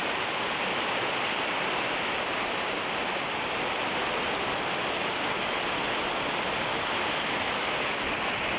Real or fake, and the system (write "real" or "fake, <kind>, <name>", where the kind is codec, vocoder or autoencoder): real